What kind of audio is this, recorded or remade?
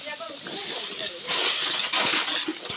recorded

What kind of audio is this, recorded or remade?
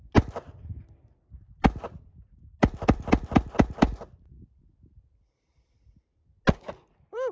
recorded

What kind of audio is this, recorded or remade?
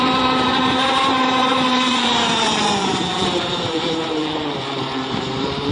remade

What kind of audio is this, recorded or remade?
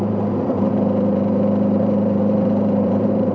remade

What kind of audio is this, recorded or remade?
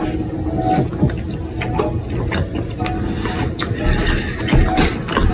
recorded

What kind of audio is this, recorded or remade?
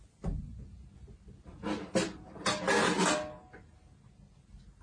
recorded